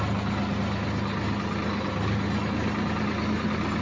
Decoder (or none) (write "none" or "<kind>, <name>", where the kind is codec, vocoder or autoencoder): none